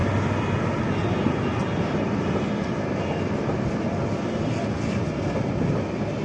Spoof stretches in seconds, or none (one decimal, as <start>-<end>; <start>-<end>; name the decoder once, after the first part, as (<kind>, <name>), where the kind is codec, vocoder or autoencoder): none

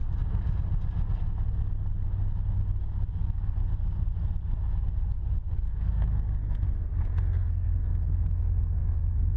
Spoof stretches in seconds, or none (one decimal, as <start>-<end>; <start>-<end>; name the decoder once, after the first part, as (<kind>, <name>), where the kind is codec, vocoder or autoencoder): 3.1-3.6 (codec, SNAC); 5.5-9.4

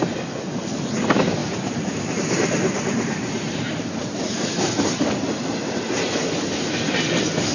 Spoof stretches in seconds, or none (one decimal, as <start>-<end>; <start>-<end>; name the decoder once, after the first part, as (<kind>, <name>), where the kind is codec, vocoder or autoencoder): 1.4-4.6 (vocoder, BigVGAN v2)

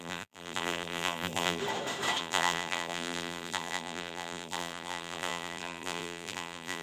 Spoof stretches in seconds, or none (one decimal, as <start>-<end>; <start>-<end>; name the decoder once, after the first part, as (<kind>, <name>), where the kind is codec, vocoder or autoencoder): 0.0-1.6 (vocoder, BigVGAN v2); 2.2-6.8

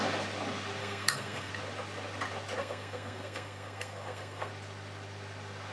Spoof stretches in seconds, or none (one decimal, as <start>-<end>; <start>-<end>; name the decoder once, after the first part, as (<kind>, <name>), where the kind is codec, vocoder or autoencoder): 0.8-1.5 (codec, SNAC); 2.6-4.5

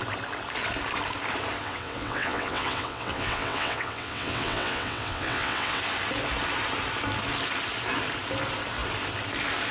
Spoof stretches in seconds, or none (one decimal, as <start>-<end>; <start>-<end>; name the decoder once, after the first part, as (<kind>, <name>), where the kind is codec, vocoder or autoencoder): 1.6-5.8 (vocoder, WaveNeXt)

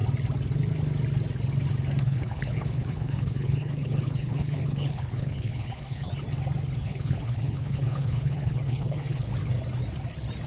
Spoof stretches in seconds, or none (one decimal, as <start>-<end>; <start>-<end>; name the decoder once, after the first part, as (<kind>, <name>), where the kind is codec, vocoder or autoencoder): 2.0-6.1 (codec, HILCodec); 6.8-9.3